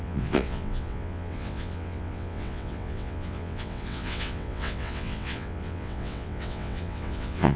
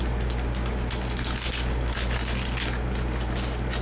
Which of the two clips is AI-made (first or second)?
first